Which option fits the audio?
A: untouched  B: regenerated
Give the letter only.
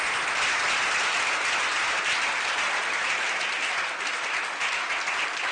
A